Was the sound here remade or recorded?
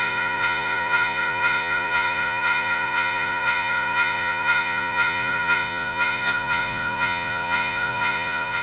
remade